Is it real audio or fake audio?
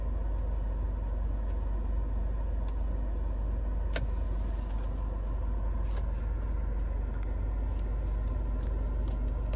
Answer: real